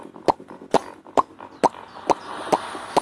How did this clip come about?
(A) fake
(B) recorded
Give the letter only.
B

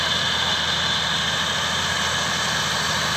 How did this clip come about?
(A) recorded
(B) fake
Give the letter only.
A